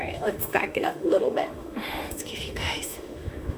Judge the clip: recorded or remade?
remade